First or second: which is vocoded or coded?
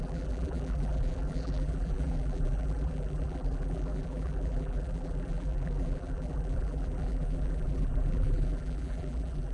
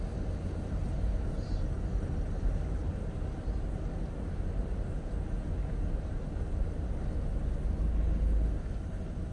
first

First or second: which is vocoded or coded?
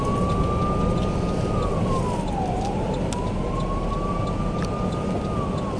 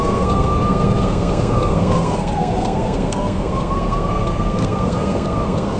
second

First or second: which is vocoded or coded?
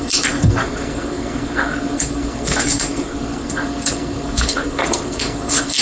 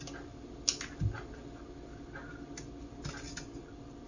first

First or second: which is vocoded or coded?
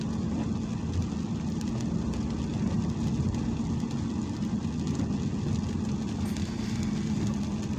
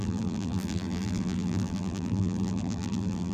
second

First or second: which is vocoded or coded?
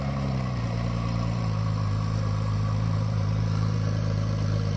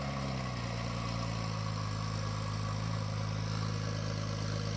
first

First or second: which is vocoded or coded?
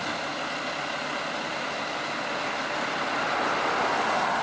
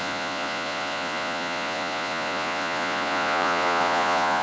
second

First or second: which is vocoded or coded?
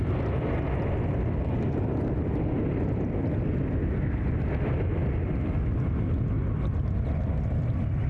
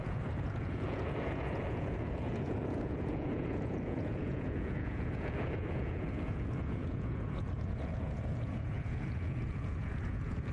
second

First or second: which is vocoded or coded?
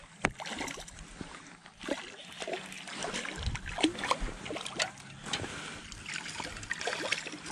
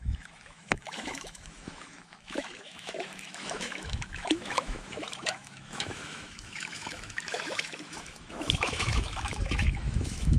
second